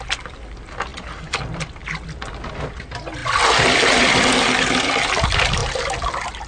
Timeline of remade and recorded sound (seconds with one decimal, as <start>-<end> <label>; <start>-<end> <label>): 0.0-6.5 recorded